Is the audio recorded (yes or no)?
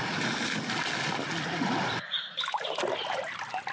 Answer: yes